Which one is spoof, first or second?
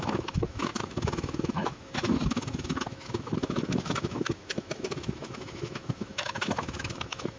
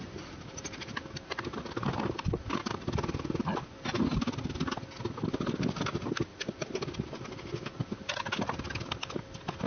first